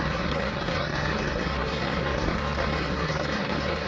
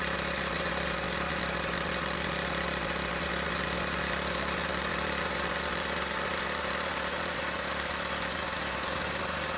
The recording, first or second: second